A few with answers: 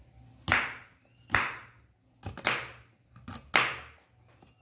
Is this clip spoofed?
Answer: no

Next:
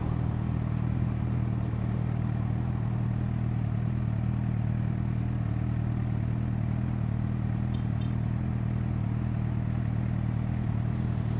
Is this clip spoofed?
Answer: no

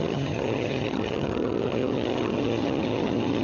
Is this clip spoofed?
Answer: yes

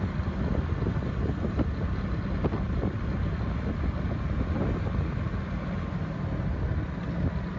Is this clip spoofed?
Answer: no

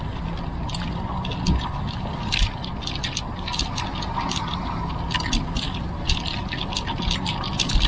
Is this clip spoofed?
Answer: no